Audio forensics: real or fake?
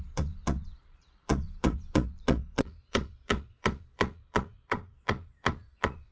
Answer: fake